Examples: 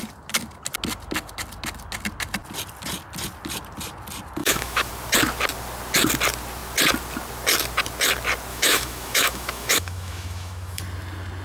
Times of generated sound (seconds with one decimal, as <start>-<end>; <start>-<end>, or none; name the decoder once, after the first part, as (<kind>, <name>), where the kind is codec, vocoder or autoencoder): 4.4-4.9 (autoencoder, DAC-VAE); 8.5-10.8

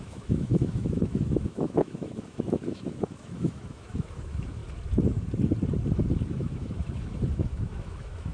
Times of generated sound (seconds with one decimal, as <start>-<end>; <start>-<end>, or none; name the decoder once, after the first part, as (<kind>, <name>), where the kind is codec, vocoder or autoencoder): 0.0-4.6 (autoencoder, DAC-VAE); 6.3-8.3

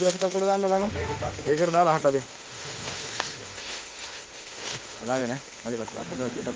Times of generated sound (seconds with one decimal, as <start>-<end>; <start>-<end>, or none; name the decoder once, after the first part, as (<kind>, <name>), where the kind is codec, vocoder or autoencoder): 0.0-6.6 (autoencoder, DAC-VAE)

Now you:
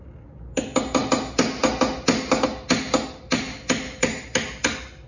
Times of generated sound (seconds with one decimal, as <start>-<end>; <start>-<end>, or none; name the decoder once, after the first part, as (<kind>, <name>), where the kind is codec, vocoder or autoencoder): none